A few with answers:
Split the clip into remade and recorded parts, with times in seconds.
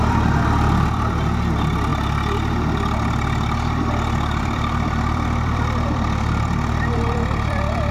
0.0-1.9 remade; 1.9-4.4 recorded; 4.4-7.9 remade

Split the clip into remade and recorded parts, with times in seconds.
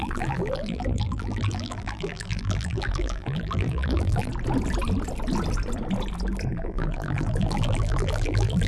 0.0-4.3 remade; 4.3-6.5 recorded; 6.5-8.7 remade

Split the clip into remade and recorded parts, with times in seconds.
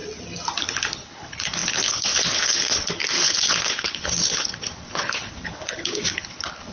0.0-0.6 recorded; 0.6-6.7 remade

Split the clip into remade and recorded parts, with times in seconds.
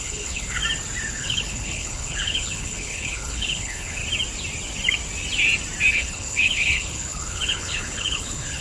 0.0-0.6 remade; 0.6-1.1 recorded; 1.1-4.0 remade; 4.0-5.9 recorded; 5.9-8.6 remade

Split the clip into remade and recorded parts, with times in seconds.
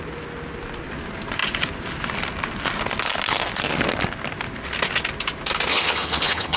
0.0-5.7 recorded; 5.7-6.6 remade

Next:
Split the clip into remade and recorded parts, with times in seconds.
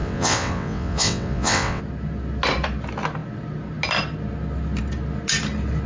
0.0-1.8 remade; 1.8-5.9 recorded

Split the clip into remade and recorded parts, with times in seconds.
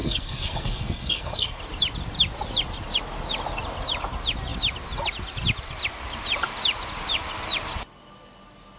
0.0-1.6 remade; 1.6-8.8 recorded